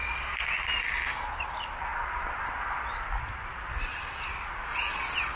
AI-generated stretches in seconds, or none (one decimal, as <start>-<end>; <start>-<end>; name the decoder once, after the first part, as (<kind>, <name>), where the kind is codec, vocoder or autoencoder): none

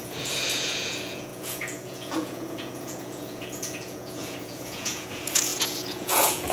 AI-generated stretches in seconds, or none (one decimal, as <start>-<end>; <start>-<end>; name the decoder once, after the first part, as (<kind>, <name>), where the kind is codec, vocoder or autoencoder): 0.0-6.5 (vocoder, Vocos)

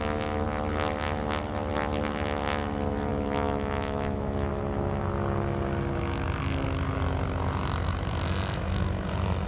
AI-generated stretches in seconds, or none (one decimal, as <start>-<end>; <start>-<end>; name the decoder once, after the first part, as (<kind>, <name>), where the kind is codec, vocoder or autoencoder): 3.1-4.5 (autoencoder, DAC-VAE)

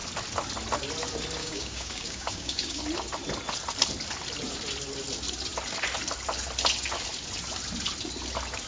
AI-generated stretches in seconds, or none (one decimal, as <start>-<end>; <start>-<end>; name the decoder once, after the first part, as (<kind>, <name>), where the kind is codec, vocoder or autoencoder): 1.4-2.8 (codec, DAC)

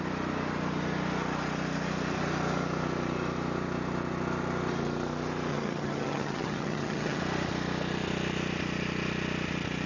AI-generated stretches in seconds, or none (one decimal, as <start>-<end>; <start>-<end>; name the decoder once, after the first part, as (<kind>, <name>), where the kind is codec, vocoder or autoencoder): 5.5-7.2 (vocoder, HiFi-GAN)